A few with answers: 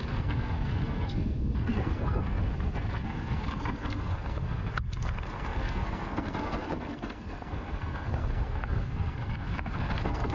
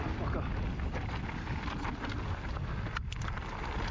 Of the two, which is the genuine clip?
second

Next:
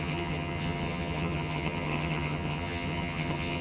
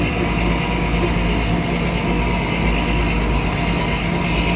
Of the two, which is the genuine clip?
second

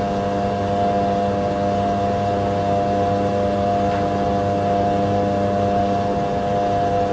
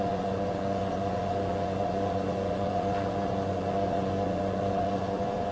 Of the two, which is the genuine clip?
first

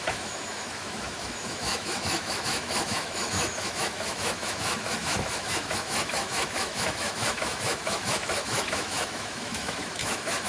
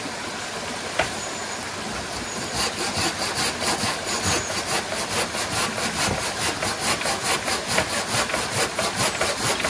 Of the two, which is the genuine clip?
second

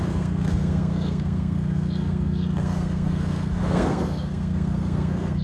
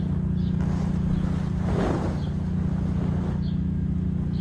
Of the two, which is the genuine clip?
second